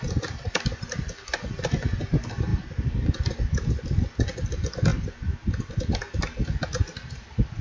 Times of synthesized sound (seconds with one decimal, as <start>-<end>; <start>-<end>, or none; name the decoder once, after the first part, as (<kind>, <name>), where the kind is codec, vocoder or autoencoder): none